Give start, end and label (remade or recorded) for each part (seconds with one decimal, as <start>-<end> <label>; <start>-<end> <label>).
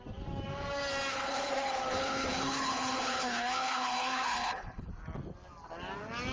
0.0-1.1 recorded; 1.1-4.9 remade; 4.9-6.3 recorded